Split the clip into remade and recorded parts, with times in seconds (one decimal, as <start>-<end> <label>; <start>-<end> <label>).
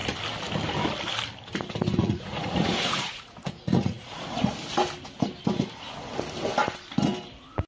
0.0-2.0 recorded; 2.0-4.5 remade; 4.5-7.7 recorded